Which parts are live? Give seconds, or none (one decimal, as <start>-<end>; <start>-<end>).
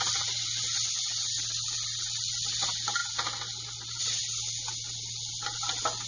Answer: 0.0-6.1